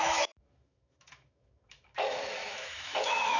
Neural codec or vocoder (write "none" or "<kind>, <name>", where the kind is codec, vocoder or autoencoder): autoencoder, DAC-VAE